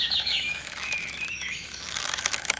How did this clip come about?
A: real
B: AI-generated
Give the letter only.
B